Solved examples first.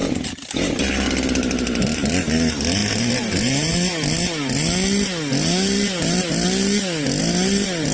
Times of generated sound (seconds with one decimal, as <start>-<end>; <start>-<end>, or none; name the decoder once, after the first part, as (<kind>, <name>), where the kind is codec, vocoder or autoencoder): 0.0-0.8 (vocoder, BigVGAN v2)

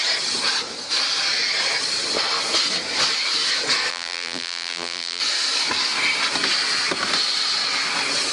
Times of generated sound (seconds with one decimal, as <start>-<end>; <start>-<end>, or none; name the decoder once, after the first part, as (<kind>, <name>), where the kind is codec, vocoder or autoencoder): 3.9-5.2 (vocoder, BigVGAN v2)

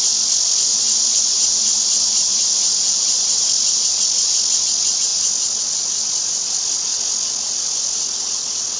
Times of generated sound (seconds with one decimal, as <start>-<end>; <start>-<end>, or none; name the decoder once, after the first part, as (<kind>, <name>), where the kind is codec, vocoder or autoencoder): 0.7-3.5 (vocoder, BigVGAN v2)

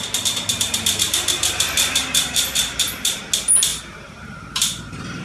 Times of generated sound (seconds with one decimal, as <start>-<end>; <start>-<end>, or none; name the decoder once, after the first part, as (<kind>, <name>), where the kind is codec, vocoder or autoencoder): 0.5-3.2 (vocoder, BigVGAN v2); 3.7-5.2

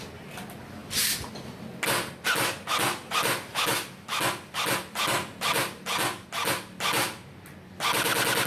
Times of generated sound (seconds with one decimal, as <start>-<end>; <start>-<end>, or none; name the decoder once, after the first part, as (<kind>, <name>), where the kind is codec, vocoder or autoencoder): none

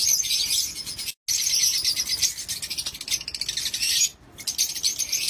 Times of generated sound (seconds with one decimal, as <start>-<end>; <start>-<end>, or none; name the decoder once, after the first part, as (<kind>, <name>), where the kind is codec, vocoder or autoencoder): none